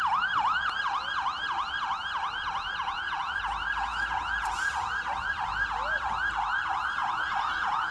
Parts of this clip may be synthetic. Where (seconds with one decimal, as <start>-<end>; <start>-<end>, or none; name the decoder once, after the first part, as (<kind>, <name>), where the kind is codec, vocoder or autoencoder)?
2.8-3.3 (vocoder, Vocos); 7.0-7.9